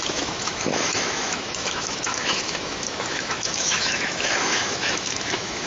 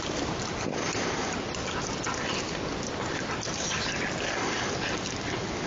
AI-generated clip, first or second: first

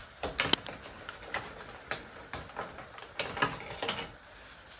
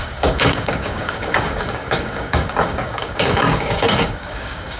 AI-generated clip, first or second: second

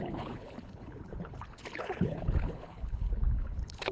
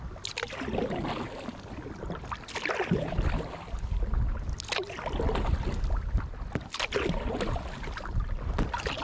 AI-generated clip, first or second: first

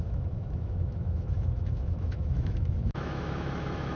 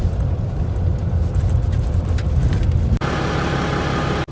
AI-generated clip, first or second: first